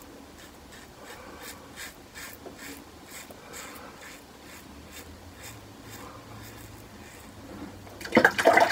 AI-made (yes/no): no